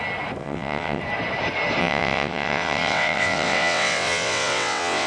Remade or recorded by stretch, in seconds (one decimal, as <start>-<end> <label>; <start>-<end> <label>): 0.0-0.4 recorded; 0.4-1.0 remade; 1.0-1.8 recorded; 1.8-5.1 remade